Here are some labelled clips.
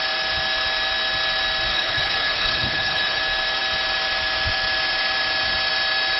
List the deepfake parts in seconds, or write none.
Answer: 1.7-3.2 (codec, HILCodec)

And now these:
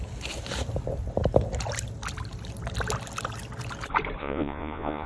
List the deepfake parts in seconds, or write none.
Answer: 4.2-5.1 (vocoder, Vocos)

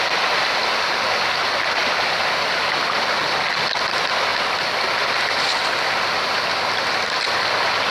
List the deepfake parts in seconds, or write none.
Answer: none

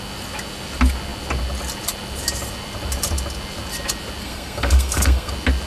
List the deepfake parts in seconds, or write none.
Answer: 4.2-5.3 (codec, SNAC)

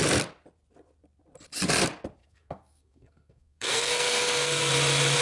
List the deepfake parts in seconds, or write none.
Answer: 2.2-4.7 (codec, SNAC)

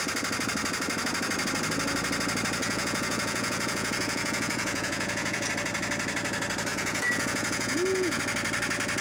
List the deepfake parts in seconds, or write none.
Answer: 2.6-5.5 (vocoder, Vocos); 6.7-8.2

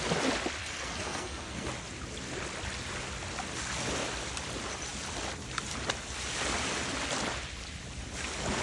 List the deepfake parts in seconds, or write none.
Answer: 0.6-1.7 (codec, SNAC)